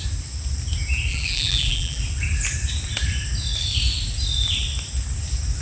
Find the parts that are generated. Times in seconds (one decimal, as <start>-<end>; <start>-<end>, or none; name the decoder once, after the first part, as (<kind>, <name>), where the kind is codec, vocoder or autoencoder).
1.1-2.0 (vocoder, BigVGAN v2)